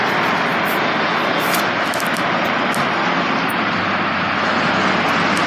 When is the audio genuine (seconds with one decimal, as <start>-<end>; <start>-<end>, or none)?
0.0-5.5